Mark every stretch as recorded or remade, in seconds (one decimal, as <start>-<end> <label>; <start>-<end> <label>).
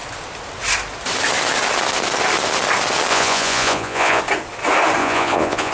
0.0-3.1 recorded; 3.1-4.2 remade; 4.2-5.0 recorded; 5.0-5.7 remade